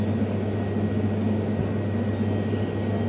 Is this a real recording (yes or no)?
yes